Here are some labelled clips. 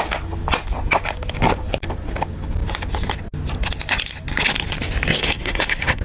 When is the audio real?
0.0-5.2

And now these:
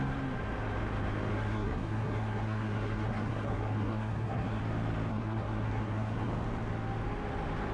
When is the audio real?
0.0-1.3; 4.6-5.1; 6.3-7.7

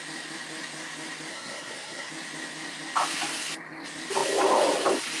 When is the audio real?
0.0-1.3; 2.1-5.2

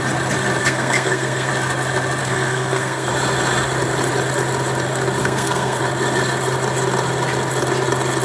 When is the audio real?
0.0-0.6; 1.5-2.2; 3.1-5.2; 5.8-8.2

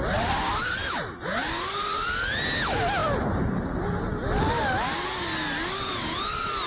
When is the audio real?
0.0-6.7

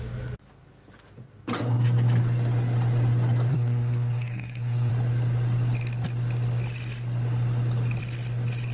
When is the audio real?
0.0-3.5; 4.9-8.7

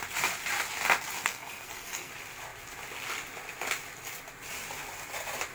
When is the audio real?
0.0-1.2; 2.1-5.5

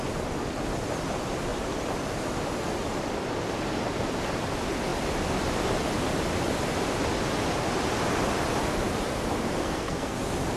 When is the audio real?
0.0-9.6; 10.2-10.6